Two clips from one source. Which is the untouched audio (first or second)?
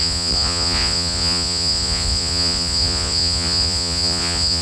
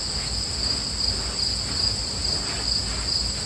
second